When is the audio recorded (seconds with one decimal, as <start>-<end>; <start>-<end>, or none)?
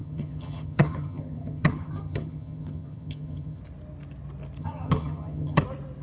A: 3.6-4.6; 5.6-6.0